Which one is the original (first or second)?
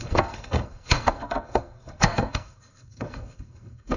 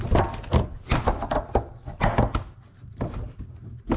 second